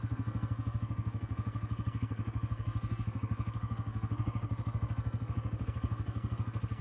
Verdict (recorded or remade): remade